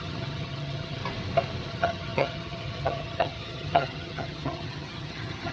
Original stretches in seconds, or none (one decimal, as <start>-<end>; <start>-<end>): 1.0-1.7